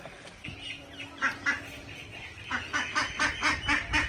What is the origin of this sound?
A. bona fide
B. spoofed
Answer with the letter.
A